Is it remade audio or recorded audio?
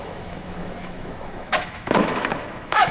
remade